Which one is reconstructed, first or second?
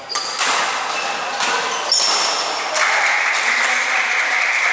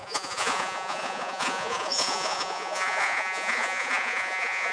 second